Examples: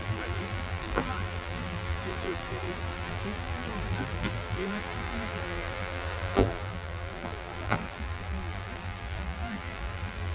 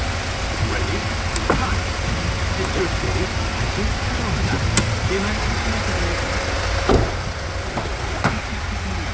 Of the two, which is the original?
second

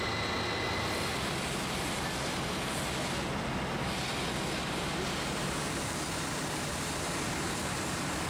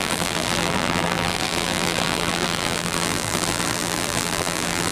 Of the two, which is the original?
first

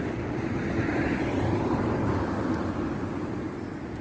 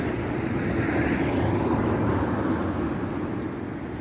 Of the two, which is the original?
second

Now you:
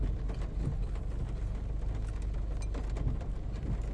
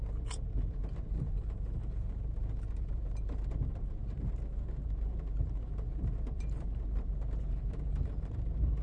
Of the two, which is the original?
first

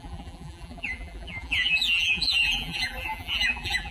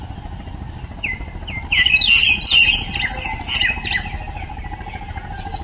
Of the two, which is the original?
second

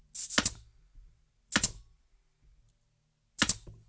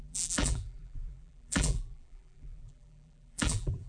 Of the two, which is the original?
first